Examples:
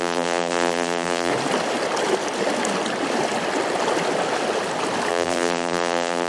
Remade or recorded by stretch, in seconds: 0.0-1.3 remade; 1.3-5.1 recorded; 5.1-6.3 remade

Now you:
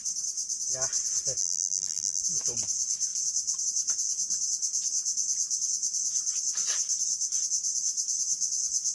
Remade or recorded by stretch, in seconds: 0.0-1.4 recorded; 1.4-2.2 remade; 2.2-8.9 recorded